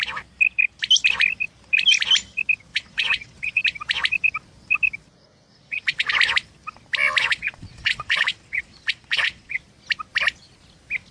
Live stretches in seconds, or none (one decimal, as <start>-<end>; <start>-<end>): 0.0-2.7; 3.6-5.5; 6.1-7.3; 9.6-11.1